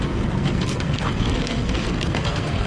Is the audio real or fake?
fake